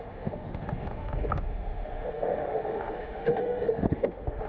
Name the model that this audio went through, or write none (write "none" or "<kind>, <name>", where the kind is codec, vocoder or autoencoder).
autoencoder, DAC-VAE